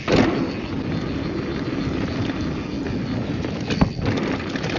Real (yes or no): yes